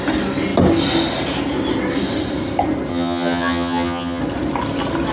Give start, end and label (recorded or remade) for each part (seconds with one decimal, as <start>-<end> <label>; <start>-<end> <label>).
0.0-2.9 recorded; 2.9-4.2 remade; 4.2-5.1 recorded